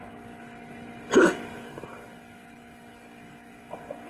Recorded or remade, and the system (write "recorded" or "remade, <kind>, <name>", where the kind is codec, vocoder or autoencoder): remade, codec, DAC